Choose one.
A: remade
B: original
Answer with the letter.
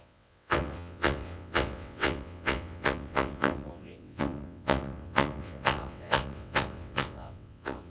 A